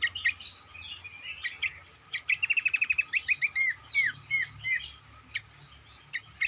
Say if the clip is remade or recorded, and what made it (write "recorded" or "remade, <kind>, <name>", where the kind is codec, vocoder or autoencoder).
recorded